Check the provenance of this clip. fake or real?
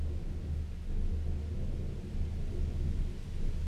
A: real